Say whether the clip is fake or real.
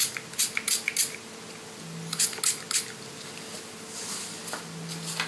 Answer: real